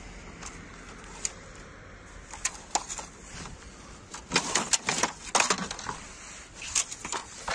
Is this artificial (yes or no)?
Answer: no